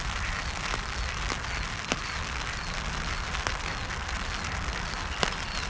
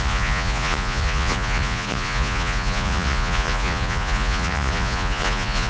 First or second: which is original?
first